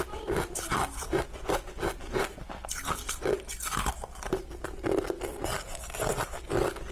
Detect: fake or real real